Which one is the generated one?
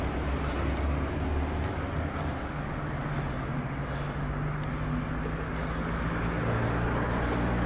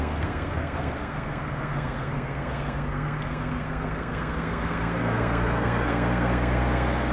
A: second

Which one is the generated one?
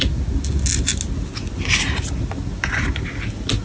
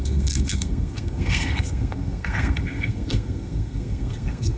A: second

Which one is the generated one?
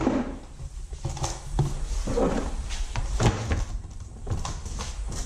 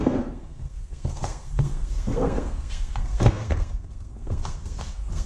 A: second